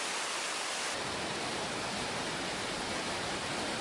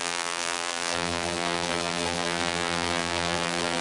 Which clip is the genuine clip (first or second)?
first